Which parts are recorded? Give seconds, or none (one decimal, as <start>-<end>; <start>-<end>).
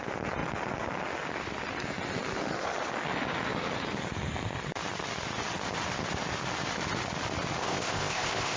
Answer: 0.0-7.6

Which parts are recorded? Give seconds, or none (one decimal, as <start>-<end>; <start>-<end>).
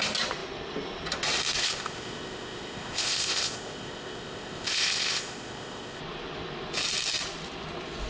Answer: 0.0-1.6; 6.0-8.1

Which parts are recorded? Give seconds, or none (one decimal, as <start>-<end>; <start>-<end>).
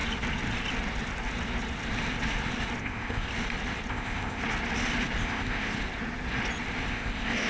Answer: 0.0-2.8; 3.3-3.9; 4.4-5.2; 5.7-6.9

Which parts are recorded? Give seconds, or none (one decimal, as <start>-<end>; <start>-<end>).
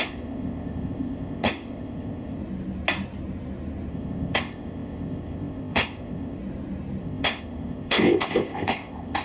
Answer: 2.4-3.9; 6.4-7.0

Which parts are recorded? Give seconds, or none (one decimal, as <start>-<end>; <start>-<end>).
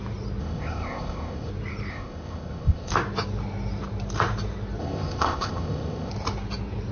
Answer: 0.0-0.4; 1.5-1.9; 2.9-4.8; 6.1-6.9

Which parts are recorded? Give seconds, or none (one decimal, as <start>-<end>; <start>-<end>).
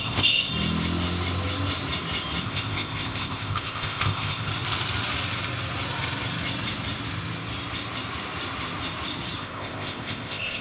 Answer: 0.5-2.4; 4.5-9.4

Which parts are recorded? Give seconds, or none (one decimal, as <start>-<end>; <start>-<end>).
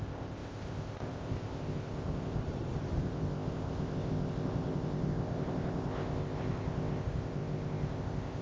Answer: 2.4-3.0